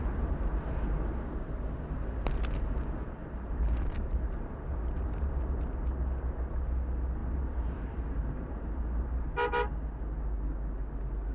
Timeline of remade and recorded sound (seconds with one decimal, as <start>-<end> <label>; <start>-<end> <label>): 0.0-3.2 recorded; 3.2-5.6 remade; 5.6-7.2 recorded; 7.2-9.3 remade; 9.3-11.3 recorded